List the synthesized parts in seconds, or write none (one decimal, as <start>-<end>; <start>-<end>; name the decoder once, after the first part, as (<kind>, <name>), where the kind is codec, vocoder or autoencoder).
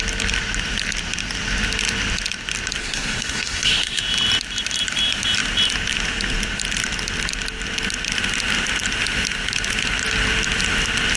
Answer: 2.8-4.0 (codec, SNAC)